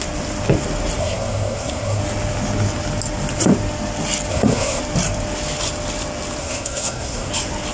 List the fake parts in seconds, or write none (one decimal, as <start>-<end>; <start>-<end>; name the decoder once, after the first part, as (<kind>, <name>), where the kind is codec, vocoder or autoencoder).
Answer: 1.0-2.0 (codec, SNAC); 4.3-4.8; 6.4-7.3